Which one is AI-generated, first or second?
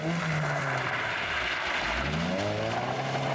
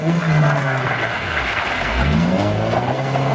second